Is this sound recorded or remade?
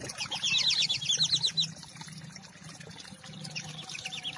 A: recorded